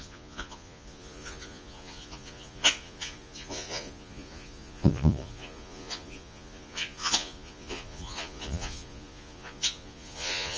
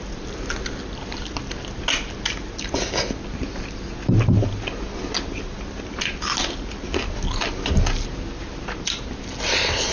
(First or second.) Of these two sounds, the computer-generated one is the first